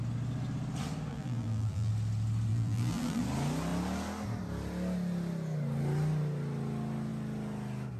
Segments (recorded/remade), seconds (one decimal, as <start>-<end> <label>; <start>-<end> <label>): 0.0-1.1 recorded; 1.1-1.9 remade; 1.9-2.5 recorded; 2.5-3.2 remade; 3.2-8.0 recorded